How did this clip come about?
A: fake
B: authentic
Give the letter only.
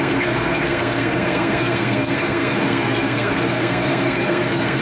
A